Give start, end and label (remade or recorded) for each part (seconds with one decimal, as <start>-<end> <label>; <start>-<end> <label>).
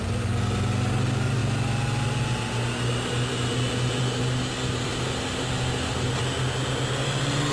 0.0-7.5 recorded